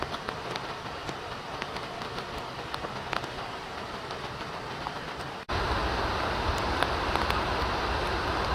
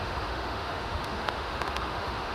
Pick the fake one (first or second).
second